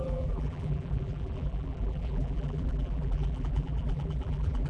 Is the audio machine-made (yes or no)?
yes